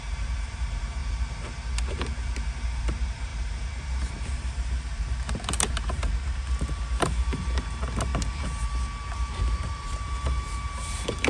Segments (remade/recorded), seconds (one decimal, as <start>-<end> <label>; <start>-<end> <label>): 0.0-1.0 remade; 1.0-1.8 recorded; 1.8-8.1 remade; 8.1-9.1 recorded; 9.1-11.3 remade